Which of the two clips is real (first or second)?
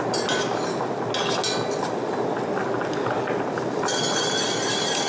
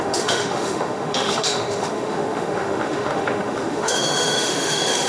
first